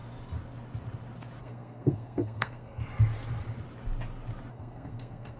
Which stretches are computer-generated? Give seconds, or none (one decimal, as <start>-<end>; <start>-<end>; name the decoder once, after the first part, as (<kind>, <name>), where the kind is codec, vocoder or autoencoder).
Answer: 1.4-2.8 (codec, SNAC); 4.5-5.4